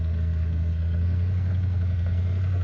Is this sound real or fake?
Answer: fake